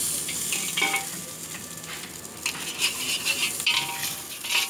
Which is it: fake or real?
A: real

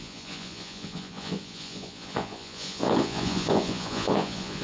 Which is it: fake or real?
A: fake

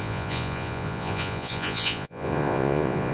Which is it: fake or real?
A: fake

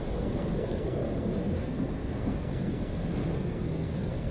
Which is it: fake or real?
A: fake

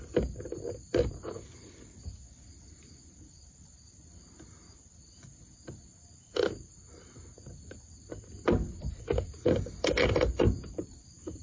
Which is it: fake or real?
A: real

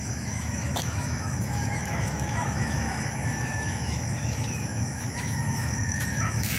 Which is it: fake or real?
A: fake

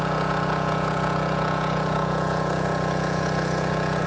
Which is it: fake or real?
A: fake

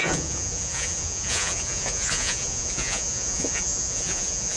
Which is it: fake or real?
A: fake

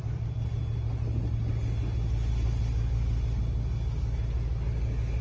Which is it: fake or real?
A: real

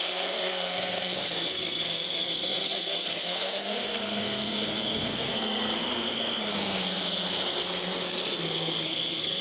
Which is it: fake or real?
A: fake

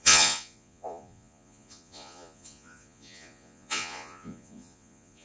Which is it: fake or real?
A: fake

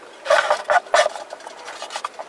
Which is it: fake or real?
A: real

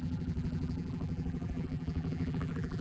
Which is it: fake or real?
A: fake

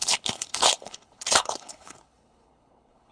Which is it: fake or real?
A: fake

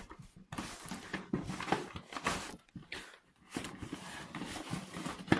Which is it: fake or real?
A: real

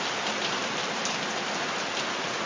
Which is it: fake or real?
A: real